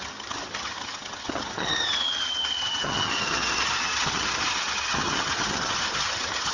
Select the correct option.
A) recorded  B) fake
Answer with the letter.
B